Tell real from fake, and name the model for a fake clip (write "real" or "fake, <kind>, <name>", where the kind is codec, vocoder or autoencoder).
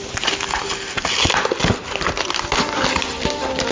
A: real